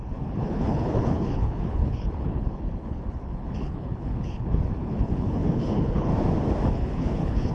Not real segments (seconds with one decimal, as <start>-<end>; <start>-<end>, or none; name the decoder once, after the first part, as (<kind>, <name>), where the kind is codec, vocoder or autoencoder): 0.0-6.1 (codec, HILCodec); 6.7-7.5